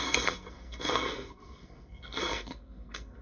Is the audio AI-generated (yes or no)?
yes